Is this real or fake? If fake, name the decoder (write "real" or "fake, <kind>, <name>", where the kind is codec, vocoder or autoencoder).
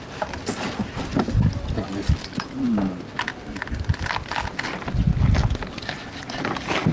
real